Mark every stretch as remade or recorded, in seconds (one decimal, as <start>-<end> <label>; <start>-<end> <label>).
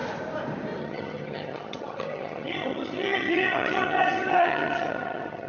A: 0.0-0.8 recorded; 0.8-5.5 remade